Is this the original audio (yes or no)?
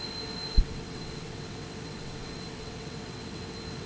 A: no